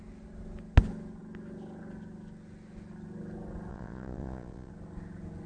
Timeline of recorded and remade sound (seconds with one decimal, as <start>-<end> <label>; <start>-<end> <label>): 0.0-3.7 recorded; 3.7-4.7 remade; 4.7-5.5 recorded